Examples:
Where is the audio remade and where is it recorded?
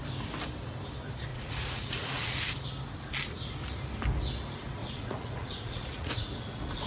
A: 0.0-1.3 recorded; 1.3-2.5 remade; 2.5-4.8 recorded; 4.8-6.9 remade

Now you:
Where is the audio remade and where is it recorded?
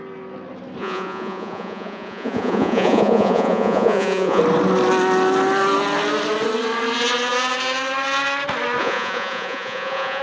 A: 0.0-0.8 recorded; 0.8-4.4 remade; 4.4-8.8 recorded; 8.8-10.2 remade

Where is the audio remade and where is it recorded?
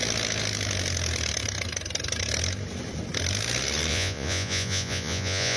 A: 0.0-3.9 recorded; 3.9-5.6 remade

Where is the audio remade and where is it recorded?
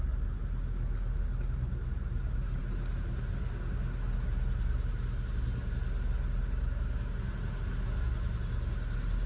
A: 0.0-9.3 recorded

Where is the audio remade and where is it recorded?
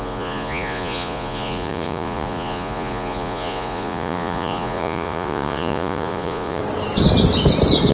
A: 0.0-6.6 remade; 6.6-7.9 recorded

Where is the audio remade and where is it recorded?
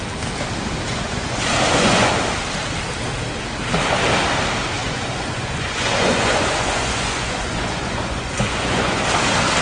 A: 0.0-0.9 recorded; 0.9-2.1 remade; 2.1-4.8 recorded; 4.8-9.0 remade; 9.0-9.6 recorded